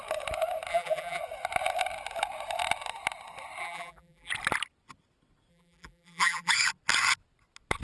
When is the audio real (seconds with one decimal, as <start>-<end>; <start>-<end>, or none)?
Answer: 0.0-0.7; 1.2-3.6; 4.3-5.5; 6.5-7.8